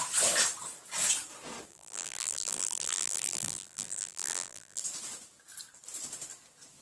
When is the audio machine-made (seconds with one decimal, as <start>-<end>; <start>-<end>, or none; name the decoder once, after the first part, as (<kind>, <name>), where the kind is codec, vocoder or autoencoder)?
1.7-4.8 (vocoder, BigVGAN v2)